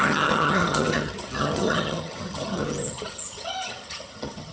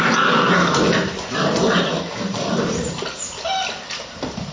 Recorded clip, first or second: second